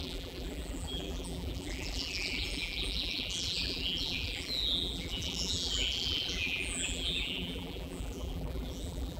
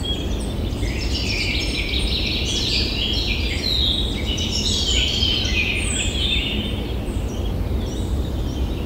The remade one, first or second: first